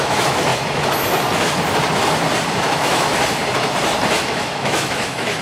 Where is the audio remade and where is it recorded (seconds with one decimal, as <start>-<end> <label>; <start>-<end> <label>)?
0.0-0.5 remade; 0.5-2.5 recorded; 2.5-3.1 remade; 3.1-4.2 recorded; 4.2-5.4 remade